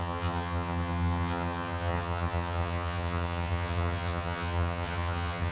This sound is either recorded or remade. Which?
remade